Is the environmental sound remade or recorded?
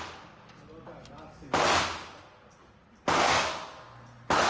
recorded